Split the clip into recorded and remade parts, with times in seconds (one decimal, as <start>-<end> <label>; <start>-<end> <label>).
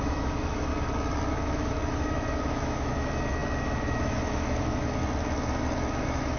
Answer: 0.0-0.7 remade; 0.7-1.3 recorded; 1.3-5.0 remade; 5.0-6.0 recorded; 6.0-6.4 remade